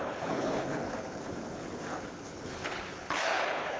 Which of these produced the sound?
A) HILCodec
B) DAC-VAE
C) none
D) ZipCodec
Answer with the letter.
A